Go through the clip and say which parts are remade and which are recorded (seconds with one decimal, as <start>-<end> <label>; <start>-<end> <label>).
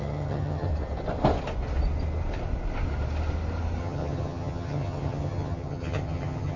0.0-0.7 remade; 0.7-3.8 recorded; 3.8-6.6 remade